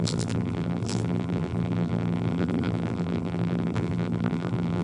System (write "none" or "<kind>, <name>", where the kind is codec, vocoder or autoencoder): vocoder, BigVGAN v2